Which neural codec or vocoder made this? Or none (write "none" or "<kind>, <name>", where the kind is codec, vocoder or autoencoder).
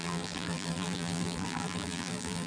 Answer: vocoder, BigVGAN v2